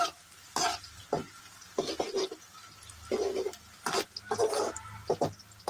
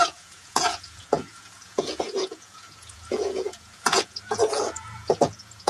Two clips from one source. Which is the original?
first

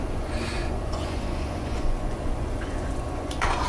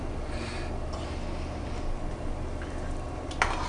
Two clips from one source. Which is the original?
second